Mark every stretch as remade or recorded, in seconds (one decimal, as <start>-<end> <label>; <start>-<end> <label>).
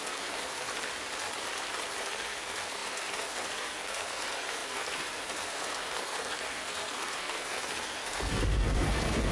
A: 0.0-0.7 remade; 0.7-2.0 recorded; 2.0-9.3 remade